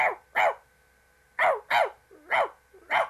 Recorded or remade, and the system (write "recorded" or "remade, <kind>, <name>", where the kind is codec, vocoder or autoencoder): recorded